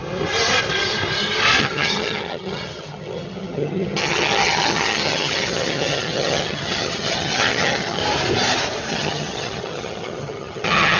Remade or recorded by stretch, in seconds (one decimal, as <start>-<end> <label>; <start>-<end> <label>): 0.0-1.6 recorded; 1.6-8.0 remade; 8.0-8.9 recorded; 8.9-11.0 remade